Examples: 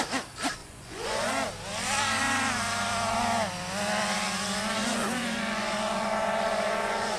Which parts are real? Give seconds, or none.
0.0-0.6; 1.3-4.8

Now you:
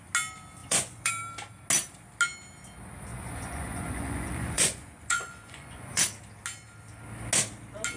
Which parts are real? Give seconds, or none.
0.0-0.6; 1.1-3.1; 6.0-8.0

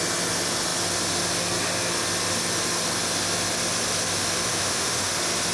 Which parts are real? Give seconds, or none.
0.0-4.5; 5.1-5.5

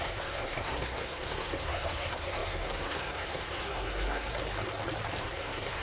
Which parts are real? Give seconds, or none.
4.3-5.2

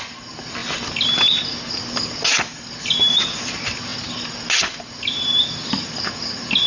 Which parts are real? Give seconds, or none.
0.0-6.7

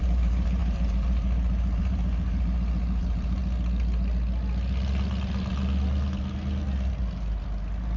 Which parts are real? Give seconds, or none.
3.4-8.0

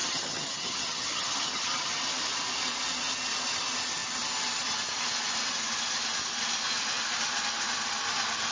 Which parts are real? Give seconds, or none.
2.0-8.5

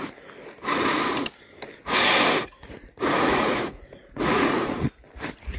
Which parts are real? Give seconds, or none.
0.0-2.4; 4.9-5.6